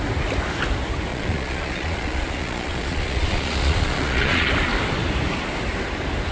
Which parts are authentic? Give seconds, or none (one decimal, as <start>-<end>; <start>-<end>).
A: 0.0-1.1; 4.5-6.3